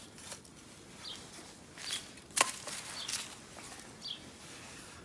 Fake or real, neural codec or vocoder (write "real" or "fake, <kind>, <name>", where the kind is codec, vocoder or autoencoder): real